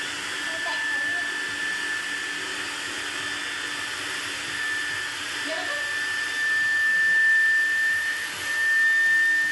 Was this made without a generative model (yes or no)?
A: yes